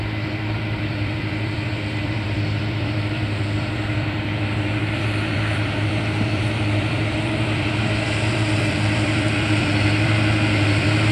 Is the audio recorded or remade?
remade